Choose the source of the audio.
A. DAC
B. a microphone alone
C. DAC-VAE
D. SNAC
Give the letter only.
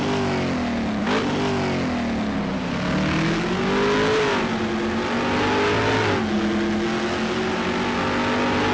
B